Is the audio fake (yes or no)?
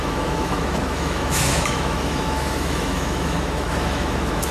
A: yes